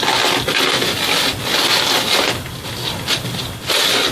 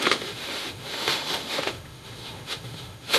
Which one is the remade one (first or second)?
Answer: second